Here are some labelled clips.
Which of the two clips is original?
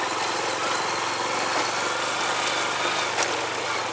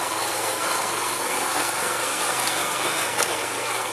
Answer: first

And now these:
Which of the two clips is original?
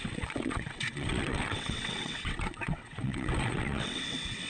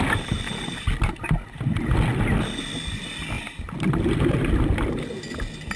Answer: second